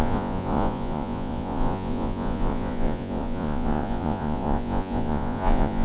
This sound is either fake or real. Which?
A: fake